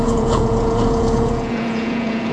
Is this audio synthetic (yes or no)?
yes